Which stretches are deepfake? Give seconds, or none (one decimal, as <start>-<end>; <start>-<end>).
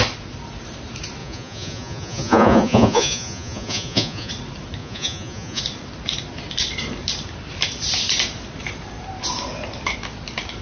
1.2-4.3; 4.8-5.6